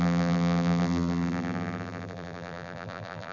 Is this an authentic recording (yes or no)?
no